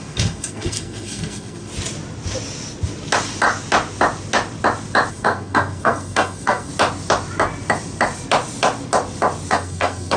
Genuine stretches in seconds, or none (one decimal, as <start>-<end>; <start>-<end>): 1.7-5.1; 6.7-9.5